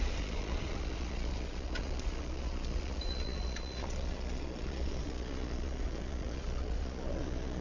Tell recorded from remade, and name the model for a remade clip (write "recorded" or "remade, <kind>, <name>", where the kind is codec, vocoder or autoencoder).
remade, vocoder, Vocos